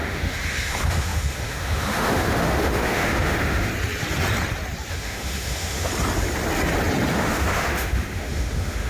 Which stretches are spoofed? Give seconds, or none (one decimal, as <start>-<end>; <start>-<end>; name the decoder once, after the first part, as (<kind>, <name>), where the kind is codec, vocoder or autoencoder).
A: 0.0-3.7 (autoencoder, DAC-VAE); 4.9-5.9; 7.1-8.9